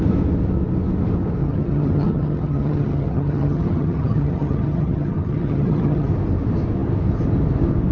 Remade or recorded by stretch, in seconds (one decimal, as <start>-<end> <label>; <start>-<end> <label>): 0.0-1.4 recorded; 1.4-6.1 remade; 6.1-7.9 recorded